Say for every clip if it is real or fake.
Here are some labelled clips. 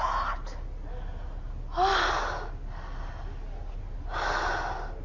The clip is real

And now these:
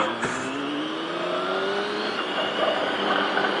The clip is real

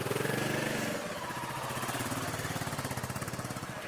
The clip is fake